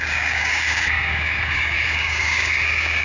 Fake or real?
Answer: fake